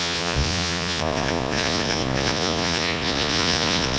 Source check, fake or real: fake